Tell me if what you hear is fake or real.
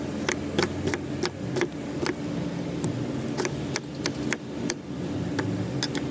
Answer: real